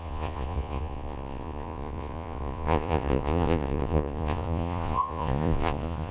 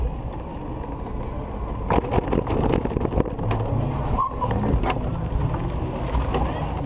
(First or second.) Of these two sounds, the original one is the second